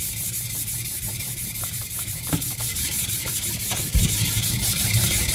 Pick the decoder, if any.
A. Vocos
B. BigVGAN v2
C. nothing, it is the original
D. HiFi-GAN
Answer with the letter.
B